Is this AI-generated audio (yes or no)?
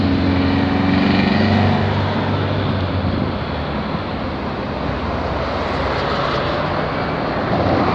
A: no